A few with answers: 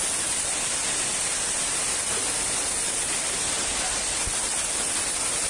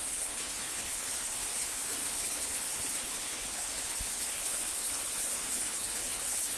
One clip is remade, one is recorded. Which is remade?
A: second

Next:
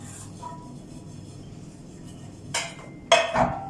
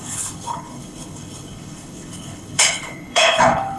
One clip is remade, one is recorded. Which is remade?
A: second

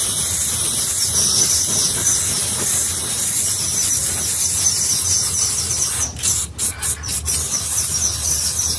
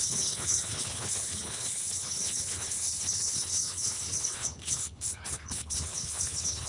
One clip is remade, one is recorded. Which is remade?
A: second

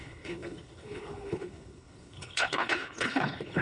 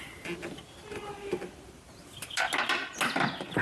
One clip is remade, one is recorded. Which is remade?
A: first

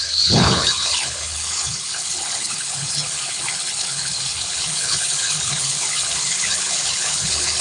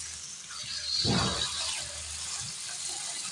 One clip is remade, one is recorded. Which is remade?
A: first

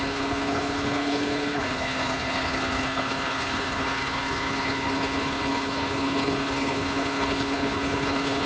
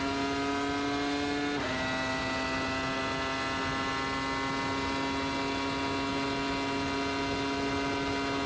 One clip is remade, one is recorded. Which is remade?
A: first